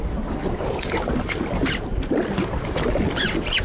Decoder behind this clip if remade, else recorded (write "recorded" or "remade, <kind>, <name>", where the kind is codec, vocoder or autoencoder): recorded